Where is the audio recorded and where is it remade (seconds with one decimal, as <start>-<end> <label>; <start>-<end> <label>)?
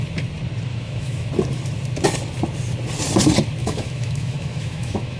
0.0-0.7 recorded; 0.7-1.3 remade; 1.3-3.6 recorded; 3.6-5.2 remade